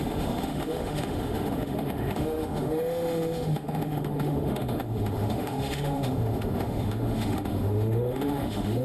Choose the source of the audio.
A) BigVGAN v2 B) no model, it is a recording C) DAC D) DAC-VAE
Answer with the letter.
D